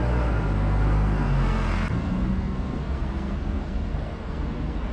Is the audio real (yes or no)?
no